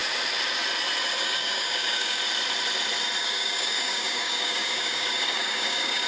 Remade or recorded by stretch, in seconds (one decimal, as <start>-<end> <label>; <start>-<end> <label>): 0.0-1.2 recorded; 1.2-2.2 remade; 2.2-3.2 recorded; 3.2-6.1 remade